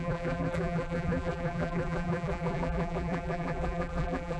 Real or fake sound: fake